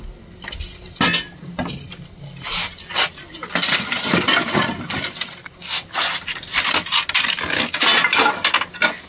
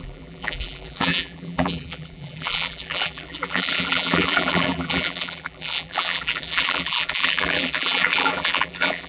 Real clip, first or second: first